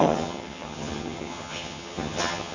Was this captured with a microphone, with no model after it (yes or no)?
no